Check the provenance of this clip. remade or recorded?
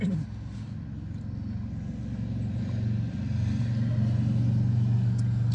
recorded